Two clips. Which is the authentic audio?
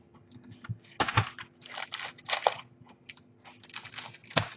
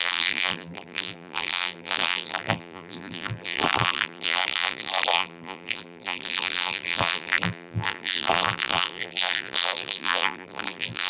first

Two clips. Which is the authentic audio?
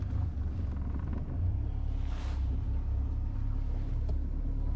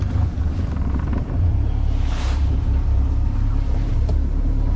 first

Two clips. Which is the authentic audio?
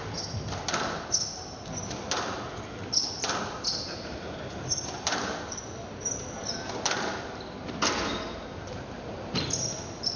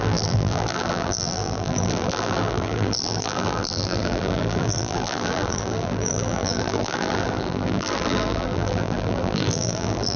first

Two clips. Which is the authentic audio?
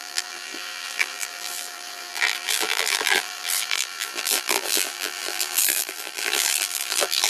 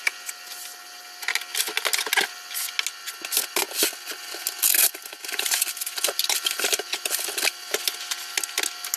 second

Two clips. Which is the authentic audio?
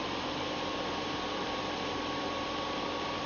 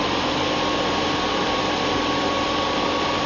second